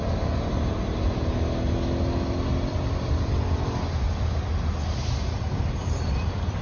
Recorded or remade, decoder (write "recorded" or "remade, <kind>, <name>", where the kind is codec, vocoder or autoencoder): recorded